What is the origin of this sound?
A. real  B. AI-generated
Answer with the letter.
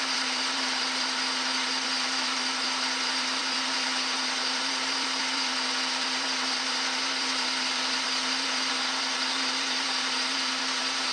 B